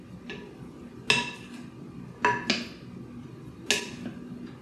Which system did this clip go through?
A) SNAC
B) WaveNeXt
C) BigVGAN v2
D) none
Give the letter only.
D